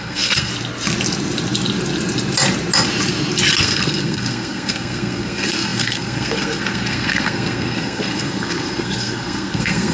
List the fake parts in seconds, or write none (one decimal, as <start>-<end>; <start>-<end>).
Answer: 0.0-0.5; 3.6-9.9